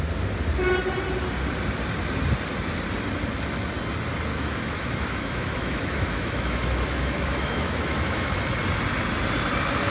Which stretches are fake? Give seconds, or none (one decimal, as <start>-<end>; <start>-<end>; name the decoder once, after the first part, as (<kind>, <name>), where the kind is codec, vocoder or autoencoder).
4.3-8.4 (autoencoder, DAC-VAE)